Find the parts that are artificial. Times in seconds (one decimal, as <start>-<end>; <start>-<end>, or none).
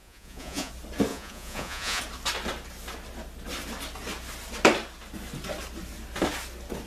0.0-0.7; 1.1-2.0